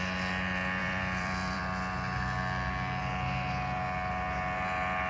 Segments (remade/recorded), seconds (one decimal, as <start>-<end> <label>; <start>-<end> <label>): 0.0-0.8 recorded; 0.8-1.6 remade; 1.6-5.1 recorded